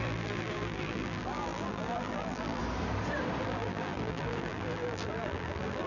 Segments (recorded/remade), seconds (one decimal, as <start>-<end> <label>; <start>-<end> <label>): 0.0-2.6 remade; 2.6-3.4 recorded; 3.4-5.9 remade